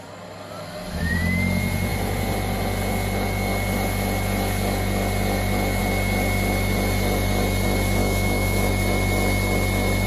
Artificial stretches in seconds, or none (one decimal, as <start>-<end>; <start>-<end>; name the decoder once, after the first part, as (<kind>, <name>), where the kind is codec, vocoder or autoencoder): 8.0-8.7 (autoencoder, DAC-VAE)